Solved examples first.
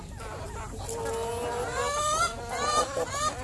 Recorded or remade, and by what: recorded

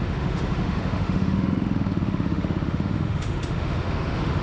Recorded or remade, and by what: remade, autoencoder, DAC-VAE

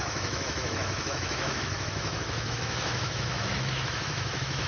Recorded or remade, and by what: remade, autoencoder, DAC-VAE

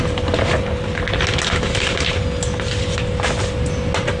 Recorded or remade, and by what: recorded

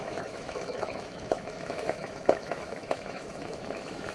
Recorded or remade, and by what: remade, autoencoder, DAC-VAE